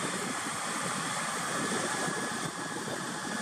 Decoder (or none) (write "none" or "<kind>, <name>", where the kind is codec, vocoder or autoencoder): vocoder, BigVGAN v2